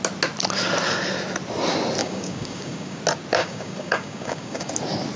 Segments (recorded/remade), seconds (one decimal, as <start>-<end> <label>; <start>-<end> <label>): 0.0-2.0 recorded; 2.0-3.0 remade; 3.0-3.4 recorded; 3.4-4.7 remade; 4.7-5.2 recorded